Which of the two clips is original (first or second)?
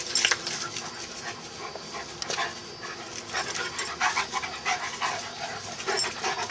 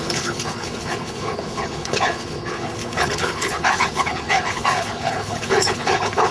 first